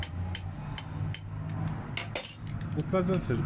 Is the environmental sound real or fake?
real